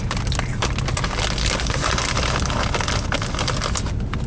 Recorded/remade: recorded